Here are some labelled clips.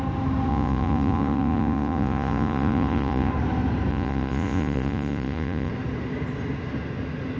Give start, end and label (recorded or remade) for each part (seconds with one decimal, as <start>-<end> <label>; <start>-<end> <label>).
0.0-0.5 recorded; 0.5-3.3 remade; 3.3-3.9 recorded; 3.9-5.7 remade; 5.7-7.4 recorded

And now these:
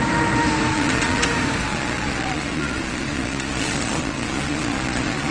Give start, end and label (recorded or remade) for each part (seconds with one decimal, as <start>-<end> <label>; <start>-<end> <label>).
0.0-0.7 recorded; 0.7-1.2 remade; 1.2-1.7 recorded; 1.7-5.3 remade

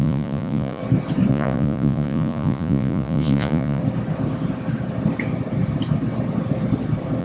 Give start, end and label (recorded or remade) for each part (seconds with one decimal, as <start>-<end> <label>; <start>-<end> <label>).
0.0-0.8 remade; 0.8-1.3 recorded; 1.3-3.8 remade; 3.8-7.2 recorded

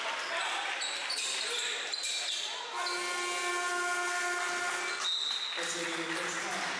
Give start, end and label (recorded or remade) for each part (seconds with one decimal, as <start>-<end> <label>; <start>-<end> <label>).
0.0-6.8 recorded